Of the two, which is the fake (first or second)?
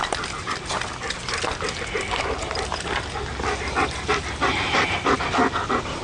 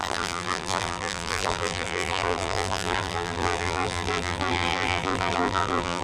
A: second